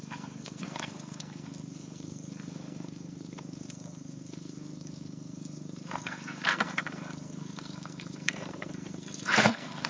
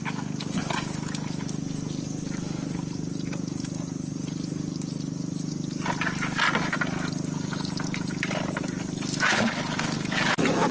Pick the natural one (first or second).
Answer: second